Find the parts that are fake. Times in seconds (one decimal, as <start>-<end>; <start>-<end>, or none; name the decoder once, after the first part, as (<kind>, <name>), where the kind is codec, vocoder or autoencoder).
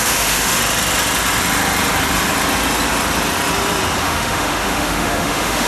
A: 0.0-0.6 (autoencoder, DAC-VAE); 4.0-5.7